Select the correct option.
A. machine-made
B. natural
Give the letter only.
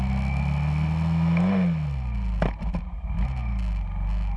B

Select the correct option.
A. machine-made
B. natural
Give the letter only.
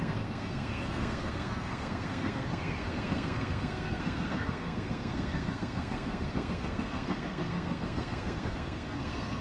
A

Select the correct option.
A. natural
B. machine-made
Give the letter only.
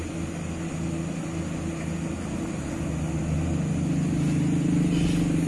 A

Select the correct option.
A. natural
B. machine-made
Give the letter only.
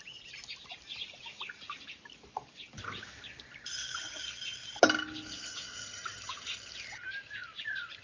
A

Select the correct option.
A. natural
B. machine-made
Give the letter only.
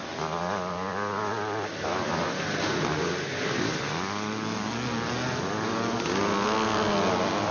A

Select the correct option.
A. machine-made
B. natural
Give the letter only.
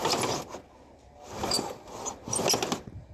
B